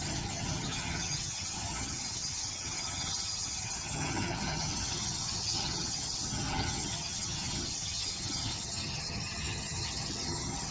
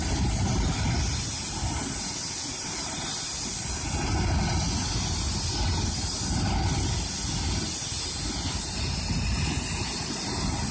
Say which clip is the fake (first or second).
first